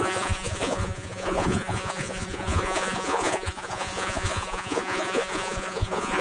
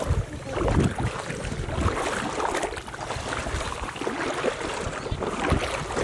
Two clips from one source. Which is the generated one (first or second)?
first